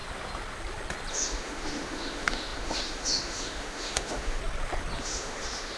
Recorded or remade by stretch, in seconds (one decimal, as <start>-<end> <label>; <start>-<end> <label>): 0.0-1.1 recorded; 1.1-4.4 remade; 4.4-5.0 recorded; 5.0-5.8 remade